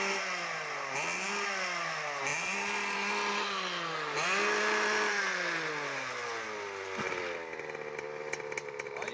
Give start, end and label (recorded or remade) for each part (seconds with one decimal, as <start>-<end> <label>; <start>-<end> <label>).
0.0-9.1 recorded